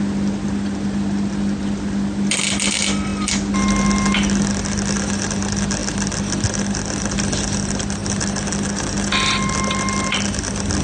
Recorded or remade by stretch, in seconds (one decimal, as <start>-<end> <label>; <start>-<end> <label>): 0.0-10.8 recorded